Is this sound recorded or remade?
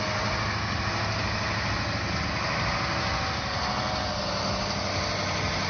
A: recorded